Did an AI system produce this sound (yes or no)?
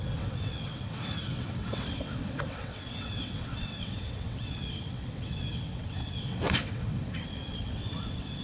yes